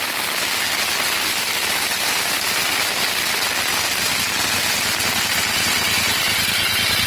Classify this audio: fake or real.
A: real